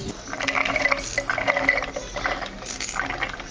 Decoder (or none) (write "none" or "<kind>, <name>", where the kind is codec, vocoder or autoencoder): none